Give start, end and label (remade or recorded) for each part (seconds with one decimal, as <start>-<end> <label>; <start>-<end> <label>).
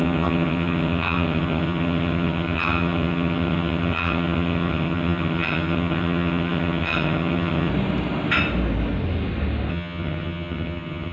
0.0-7.7 remade; 7.7-9.7 recorded; 9.7-11.1 remade